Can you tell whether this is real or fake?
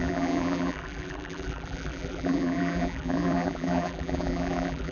fake